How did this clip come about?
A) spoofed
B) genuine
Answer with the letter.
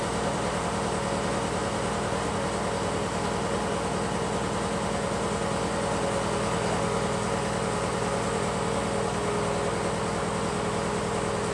B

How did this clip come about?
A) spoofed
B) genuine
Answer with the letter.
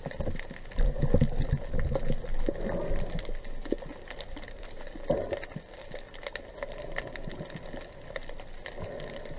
B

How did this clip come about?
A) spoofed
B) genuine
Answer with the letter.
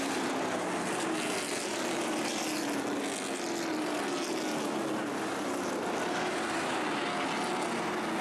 B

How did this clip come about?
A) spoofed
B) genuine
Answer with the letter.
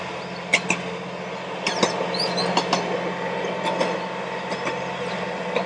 B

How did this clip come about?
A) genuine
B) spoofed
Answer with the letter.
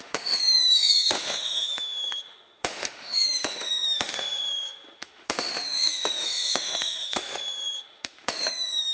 B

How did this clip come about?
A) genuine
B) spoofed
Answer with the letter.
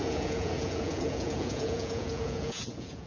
B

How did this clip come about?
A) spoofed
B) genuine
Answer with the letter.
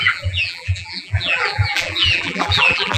A